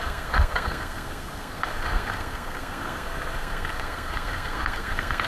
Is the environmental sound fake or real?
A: fake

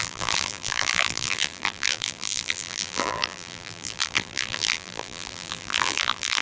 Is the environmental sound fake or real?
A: fake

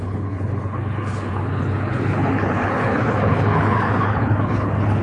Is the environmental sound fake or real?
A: fake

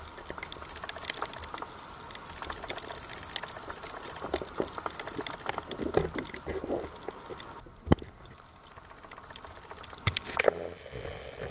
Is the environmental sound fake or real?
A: real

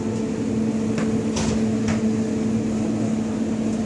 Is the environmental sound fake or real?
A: real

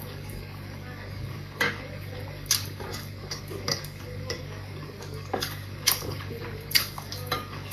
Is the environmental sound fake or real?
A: fake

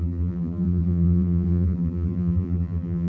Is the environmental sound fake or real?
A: fake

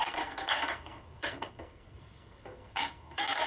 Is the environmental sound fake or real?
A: fake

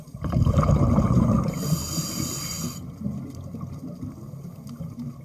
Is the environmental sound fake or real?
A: real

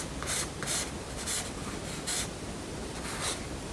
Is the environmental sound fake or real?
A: real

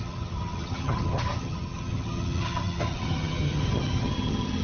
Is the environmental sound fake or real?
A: fake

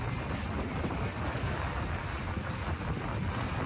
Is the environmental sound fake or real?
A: real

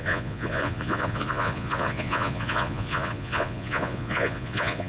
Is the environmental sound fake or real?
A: fake